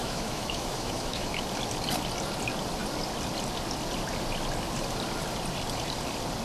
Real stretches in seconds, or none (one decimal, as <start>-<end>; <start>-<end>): 1.4-6.4